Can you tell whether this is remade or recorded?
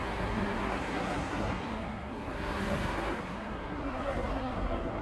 remade